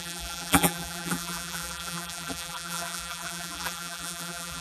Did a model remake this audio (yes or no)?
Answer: yes